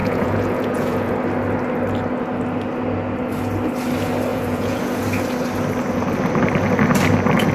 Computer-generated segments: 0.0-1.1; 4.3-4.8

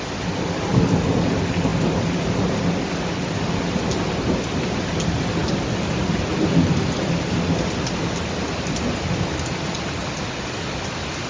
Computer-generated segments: none

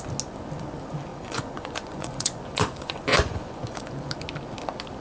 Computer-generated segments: 1.1-4.1

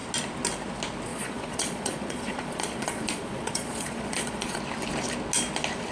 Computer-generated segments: 1.1-4.6